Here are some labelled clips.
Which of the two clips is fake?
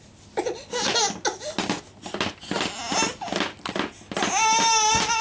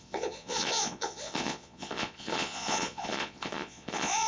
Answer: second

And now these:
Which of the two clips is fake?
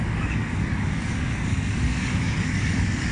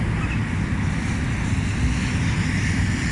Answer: first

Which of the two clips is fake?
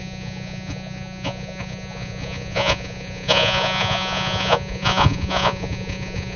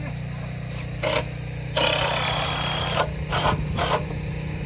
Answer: first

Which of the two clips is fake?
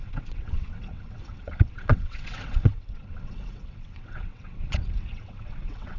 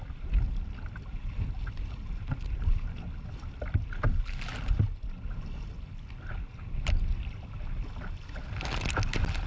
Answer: first